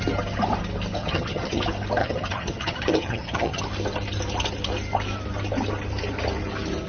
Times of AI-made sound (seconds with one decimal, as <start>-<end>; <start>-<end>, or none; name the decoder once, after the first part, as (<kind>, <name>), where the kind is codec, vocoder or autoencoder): 1.0-1.6 (vocoder, HiFi-GAN); 2.0-3.6